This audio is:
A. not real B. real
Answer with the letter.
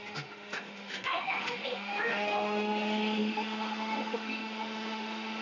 A